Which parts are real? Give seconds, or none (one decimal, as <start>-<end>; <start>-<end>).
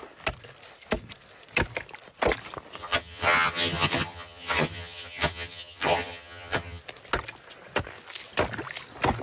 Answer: 0.0-2.8; 6.8-9.2